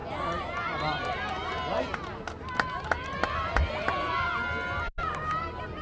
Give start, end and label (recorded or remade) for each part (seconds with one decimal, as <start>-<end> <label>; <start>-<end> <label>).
0.0-5.8 recorded